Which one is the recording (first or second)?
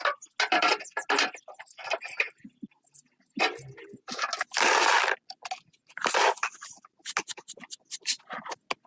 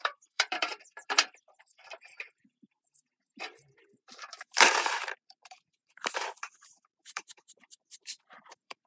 first